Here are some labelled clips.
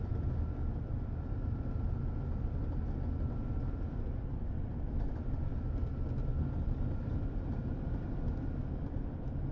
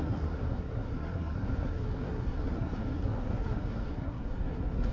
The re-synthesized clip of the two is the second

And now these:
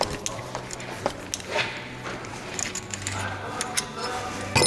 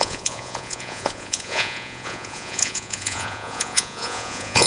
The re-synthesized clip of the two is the second